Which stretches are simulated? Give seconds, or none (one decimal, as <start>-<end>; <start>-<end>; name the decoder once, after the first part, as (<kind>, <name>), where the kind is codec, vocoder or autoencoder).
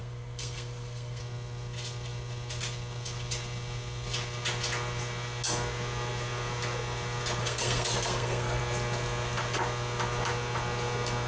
0.0-1.2 (codec, SNAC); 7.4-8.6